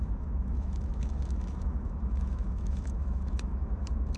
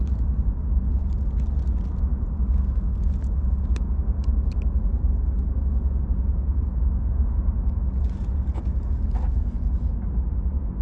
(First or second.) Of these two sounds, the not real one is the first